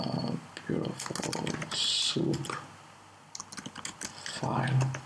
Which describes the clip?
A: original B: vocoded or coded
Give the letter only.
A